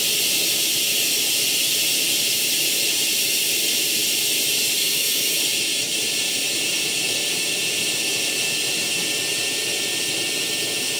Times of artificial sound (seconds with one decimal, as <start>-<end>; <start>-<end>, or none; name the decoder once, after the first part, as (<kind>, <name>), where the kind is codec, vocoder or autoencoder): 4.8-5.4 (autoencoder, DAC-VAE)